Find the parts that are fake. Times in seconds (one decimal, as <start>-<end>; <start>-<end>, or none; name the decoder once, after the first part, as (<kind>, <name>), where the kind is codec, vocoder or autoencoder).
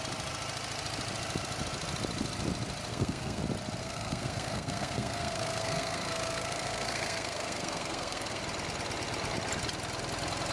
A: 2.9-3.4 (codec, SNAC); 3.8-8.4